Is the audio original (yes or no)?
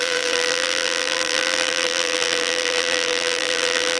no